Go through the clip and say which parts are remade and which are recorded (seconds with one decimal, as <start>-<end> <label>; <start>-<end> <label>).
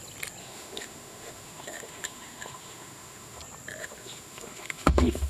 0.0-0.4 recorded; 0.4-3.4 remade; 3.4-3.8 recorded; 3.8-5.3 remade